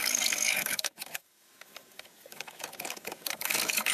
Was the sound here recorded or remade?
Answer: remade